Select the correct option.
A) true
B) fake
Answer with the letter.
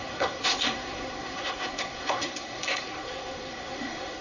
B